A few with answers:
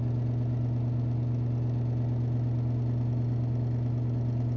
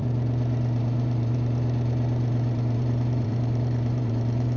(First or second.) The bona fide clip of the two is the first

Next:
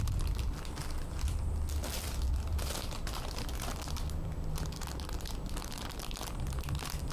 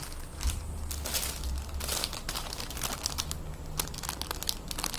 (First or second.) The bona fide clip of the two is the second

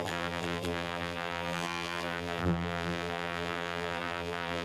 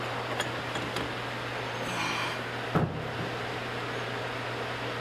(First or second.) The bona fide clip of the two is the second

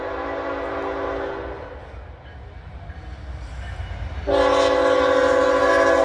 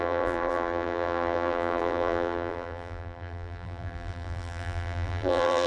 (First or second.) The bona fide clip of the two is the first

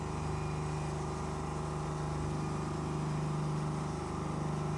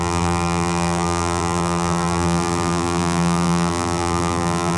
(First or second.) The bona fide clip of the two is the first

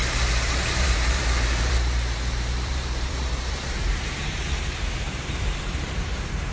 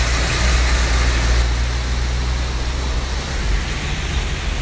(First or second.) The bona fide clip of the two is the second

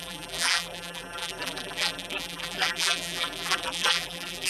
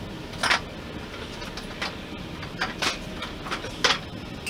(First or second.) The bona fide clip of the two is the second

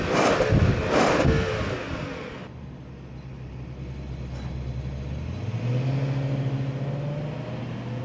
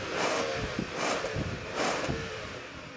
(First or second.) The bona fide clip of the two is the first